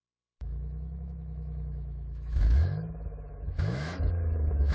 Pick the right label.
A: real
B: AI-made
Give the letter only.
B